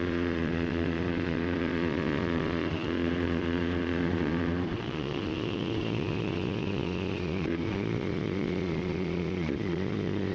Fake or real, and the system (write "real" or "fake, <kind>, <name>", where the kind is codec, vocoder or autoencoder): fake, vocoder, Vocos